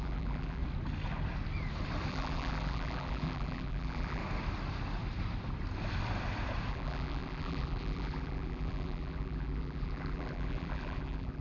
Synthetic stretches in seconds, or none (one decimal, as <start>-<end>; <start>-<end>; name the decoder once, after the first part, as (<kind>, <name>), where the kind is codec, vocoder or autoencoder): 0.0-0.6 (vocoder, BigVGAN v2); 2.1-4.2; 6.7-11.4